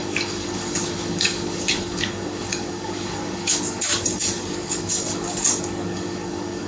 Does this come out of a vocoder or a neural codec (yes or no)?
yes